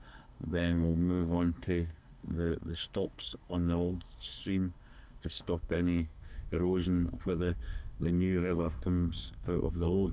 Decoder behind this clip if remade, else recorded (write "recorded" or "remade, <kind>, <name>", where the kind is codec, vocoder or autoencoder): remade, codec, SNAC